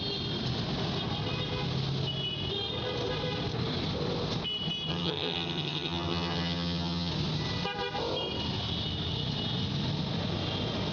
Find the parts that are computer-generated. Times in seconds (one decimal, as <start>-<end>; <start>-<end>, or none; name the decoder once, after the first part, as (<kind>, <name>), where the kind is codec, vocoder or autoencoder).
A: 4.9-7.1 (vocoder, HiFi-GAN)